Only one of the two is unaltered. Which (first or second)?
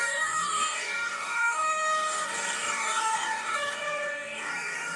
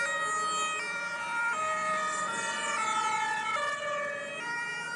second